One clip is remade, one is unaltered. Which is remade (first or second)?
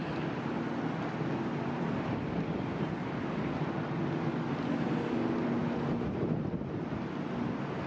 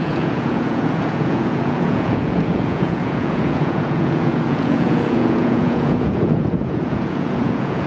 second